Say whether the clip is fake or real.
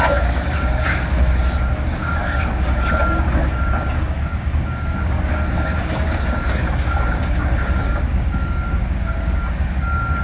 fake